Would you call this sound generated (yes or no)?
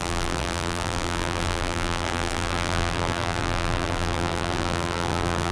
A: yes